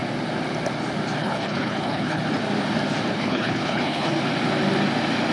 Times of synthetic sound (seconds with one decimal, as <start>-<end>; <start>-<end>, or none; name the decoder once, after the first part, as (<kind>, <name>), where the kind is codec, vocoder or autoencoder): 1.2-2.2 (codec, HILCodec); 3.1-4.2